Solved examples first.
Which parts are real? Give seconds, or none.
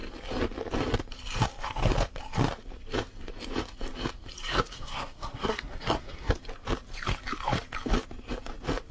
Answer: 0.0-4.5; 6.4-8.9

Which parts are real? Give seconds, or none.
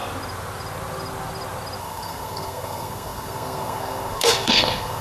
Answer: 0.0-1.8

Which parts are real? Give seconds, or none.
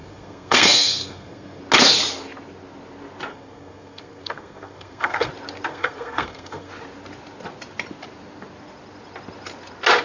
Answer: 1.6-3.3; 5.3-5.7; 6.7-10.0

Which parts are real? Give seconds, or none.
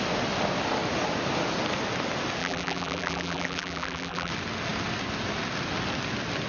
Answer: 0.0-2.4; 4.3-6.5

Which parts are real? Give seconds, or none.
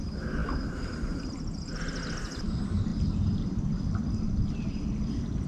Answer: 0.0-5.5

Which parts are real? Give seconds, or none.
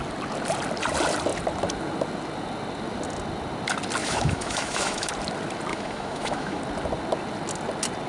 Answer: 0.0-4.0; 5.1-5.7; 6.6-8.1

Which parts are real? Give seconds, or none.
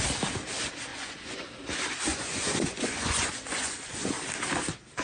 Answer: 0.0-0.9; 1.5-2.1; 4.1-5.0